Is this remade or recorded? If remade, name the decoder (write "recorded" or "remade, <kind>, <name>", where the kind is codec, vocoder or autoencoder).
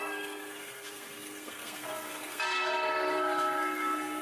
remade, codec, SNAC